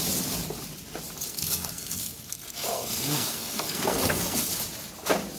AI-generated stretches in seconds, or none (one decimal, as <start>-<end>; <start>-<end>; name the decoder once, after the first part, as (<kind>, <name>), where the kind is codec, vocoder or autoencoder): 1.3-4.5 (codec, SNAC)